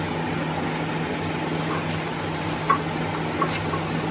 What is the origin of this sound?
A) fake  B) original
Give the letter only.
B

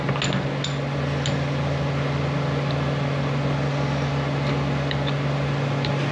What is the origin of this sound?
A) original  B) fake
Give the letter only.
A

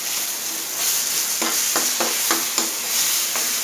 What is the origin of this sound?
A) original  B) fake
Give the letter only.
A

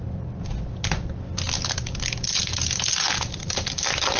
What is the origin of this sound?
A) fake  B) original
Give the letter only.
B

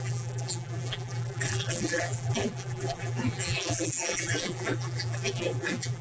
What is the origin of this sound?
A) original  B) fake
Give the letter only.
B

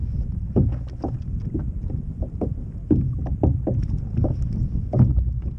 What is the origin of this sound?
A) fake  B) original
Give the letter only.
B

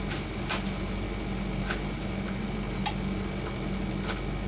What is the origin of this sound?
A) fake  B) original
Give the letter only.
B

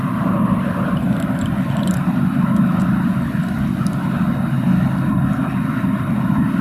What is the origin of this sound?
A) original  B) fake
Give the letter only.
A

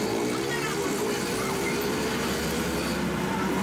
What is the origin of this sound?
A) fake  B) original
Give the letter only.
B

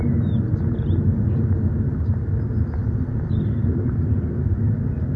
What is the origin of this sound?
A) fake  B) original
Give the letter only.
B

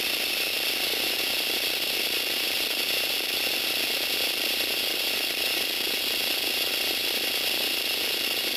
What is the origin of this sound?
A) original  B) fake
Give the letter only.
B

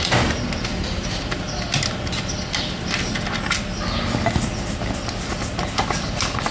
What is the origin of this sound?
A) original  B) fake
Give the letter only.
A